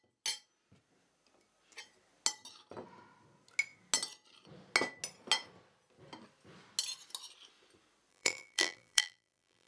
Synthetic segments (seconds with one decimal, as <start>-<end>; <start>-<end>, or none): 8.1-9.7